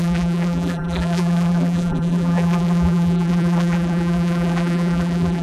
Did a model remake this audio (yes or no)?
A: yes